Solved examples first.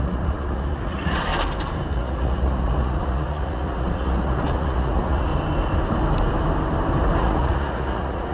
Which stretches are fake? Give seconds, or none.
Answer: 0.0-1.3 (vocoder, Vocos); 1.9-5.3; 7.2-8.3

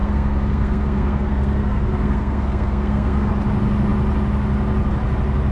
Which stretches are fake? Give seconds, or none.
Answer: 0.0-3.3 (codec, SNAC)